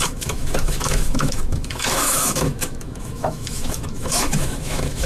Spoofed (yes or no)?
yes